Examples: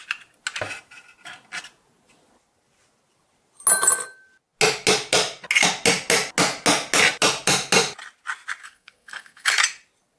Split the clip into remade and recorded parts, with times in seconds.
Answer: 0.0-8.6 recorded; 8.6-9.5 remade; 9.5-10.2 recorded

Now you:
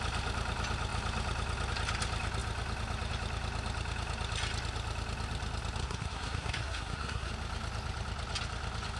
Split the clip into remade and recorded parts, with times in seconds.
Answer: 0.0-5.8 recorded; 5.8-7.3 remade; 7.3-9.0 recorded

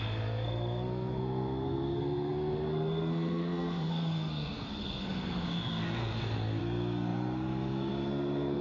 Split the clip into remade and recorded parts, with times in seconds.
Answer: 0.0-8.6 remade

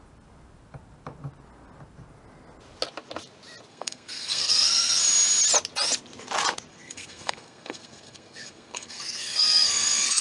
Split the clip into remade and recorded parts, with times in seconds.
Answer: 0.0-3.7 recorded; 3.7-5.0 remade; 5.0-6.7 recorded; 6.7-10.2 remade